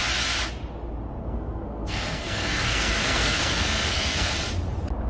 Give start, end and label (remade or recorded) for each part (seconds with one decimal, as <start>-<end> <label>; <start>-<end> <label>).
0.0-1.2 recorded; 1.2-4.3 remade; 4.3-5.1 recorded